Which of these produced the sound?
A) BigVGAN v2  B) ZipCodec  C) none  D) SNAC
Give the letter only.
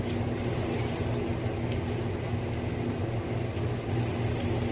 C